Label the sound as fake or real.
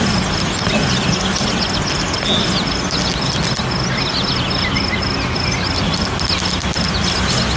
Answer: real